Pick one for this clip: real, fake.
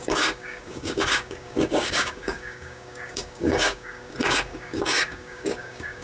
fake